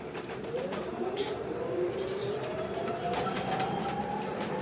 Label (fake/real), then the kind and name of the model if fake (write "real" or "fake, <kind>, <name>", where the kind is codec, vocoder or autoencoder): fake, vocoder, BigVGAN v2